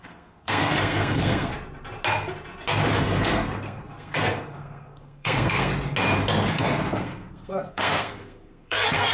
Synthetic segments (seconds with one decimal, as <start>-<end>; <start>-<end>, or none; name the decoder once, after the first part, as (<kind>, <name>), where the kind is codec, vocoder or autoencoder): 0.0-1.5 (codec, SNAC); 3.0-5.7; 6.5-9.1